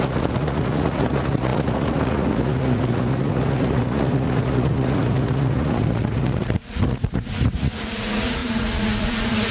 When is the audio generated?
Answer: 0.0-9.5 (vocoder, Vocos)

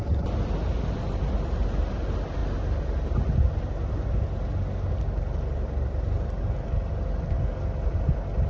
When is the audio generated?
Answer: none

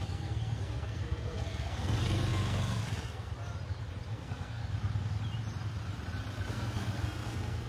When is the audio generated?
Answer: 0.0-3.3 (codec, SNAC); 4.1-4.6; 6.5-7.7

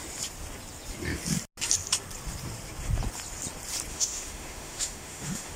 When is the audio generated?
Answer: 3.9-5.6 (autoencoder, DAC-VAE)

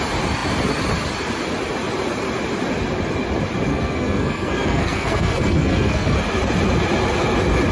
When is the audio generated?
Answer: 3.7-6.2 (codec, SNAC)

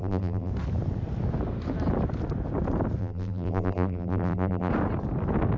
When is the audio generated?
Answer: 0.0-0.5 (vocoder, BigVGAN v2); 3.0-4.7